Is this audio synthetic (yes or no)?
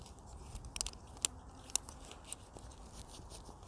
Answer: no